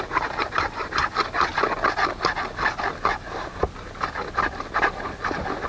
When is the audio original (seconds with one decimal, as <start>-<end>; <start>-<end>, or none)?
1.5-2.7